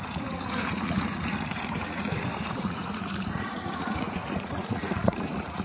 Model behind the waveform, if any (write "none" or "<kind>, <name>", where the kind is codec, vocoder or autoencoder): vocoder, Vocos